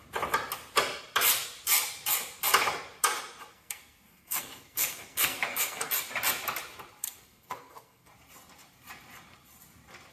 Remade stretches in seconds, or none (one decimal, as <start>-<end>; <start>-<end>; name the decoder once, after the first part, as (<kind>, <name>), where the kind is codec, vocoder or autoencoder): 3.5-5.9 (codec, SNAC); 7.0-8.1